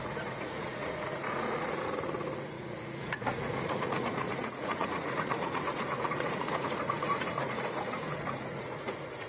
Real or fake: fake